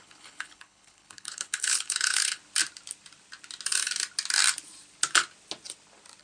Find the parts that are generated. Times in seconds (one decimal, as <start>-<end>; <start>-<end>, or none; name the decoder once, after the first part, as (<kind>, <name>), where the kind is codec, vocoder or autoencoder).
0.0-2.4 (codec, HILCodec)